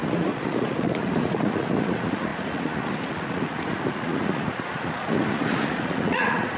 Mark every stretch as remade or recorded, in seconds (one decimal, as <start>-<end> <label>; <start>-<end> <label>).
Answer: 0.0-6.6 remade